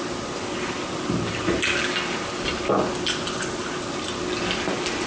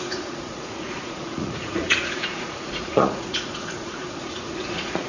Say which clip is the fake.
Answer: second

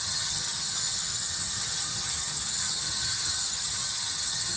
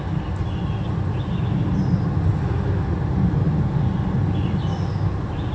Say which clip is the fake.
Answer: first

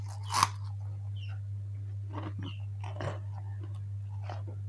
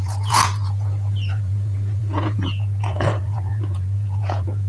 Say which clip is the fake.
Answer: second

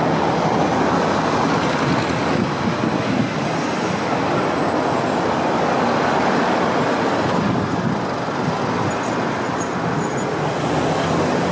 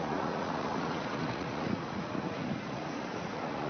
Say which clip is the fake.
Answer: second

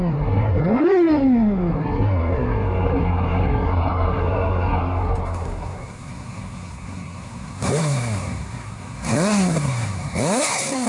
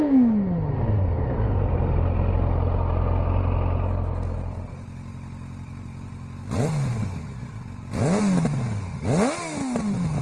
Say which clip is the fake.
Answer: first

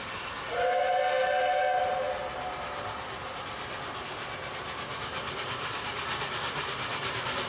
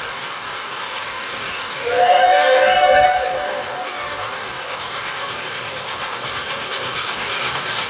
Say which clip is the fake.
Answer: second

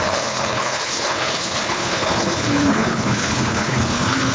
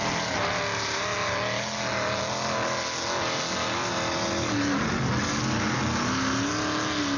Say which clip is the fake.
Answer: first